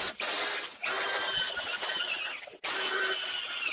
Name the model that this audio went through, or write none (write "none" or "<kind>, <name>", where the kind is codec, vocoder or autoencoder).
none